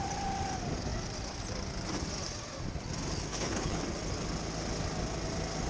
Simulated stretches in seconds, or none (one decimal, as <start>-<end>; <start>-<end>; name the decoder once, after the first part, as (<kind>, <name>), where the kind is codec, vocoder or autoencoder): 3.3-3.8 (codec, HILCodec)